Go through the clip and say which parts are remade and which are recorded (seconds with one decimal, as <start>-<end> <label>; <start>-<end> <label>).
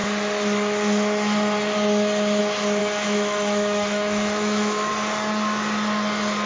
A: 0.0-2.8 recorded; 2.8-4.9 remade; 4.9-6.5 recorded